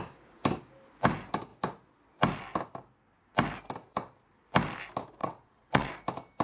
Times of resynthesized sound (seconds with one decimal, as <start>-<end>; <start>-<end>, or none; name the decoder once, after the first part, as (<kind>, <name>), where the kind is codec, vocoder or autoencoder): 5.2-5.9 (vocoder, WaveNeXt)

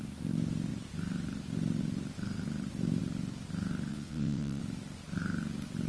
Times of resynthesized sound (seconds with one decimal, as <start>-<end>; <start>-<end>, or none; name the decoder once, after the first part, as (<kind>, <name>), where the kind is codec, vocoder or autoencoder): 3.9-4.6 (vocoder, WaveNeXt)

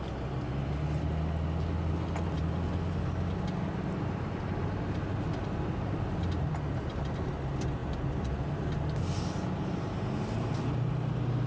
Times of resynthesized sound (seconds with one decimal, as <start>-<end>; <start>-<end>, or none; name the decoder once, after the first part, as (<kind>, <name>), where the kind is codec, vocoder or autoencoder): none

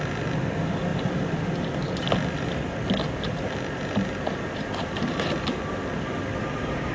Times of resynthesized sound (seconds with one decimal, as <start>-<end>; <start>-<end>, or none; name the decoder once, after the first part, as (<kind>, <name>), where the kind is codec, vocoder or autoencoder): none

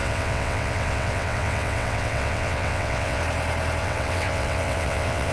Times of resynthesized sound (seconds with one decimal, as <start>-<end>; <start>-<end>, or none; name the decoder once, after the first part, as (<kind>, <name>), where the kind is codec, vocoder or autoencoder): 0.0-3.2 (vocoder, WaveNeXt); 3.8-5.3

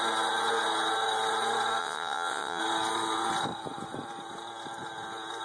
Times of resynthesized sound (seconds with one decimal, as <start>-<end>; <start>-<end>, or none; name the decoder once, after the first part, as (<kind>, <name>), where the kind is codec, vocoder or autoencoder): 1.8-2.6 (vocoder, WaveNeXt)

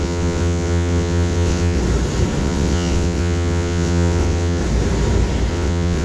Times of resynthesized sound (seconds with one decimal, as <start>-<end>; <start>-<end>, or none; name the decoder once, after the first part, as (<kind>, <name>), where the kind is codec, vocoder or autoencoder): 0.0-1.8 (vocoder, WaveNeXt); 2.4-4.6; 5.5-6.0